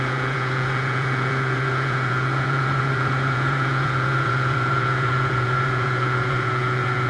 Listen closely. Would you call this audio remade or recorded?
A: remade